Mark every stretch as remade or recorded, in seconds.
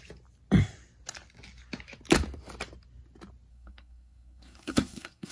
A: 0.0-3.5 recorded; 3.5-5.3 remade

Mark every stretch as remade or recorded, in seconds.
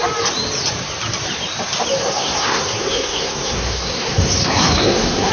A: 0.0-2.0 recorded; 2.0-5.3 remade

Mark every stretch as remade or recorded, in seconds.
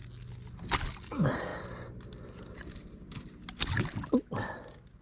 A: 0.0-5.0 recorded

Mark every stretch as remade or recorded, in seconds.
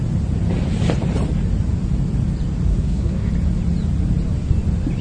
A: 0.0-2.7 recorded; 2.7-3.3 remade; 3.3-5.0 recorded